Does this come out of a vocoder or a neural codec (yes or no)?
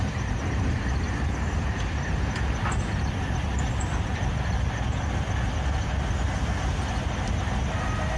no